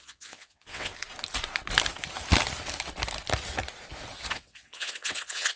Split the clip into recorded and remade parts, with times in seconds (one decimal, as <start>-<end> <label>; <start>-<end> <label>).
0.0-0.9 remade; 0.9-4.3 recorded; 4.3-5.6 remade